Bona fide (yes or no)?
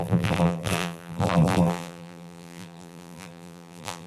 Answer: no